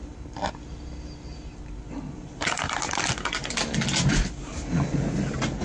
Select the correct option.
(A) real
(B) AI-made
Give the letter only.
A